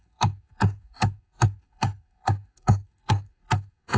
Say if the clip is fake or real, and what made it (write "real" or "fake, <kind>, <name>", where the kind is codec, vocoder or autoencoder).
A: fake, codec, SNAC